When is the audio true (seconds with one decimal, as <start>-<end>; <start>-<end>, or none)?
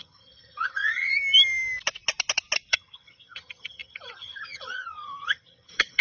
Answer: 1.1-2.7